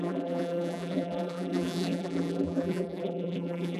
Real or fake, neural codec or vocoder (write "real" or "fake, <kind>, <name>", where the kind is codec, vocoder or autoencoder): fake, vocoder, BigVGAN v2